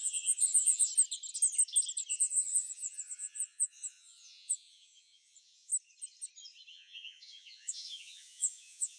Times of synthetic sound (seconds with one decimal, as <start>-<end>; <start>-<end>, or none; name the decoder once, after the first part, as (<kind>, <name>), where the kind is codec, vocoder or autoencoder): 0.0-0.9 (vocoder, Vocos); 2.1-5.7; 6.7-9.0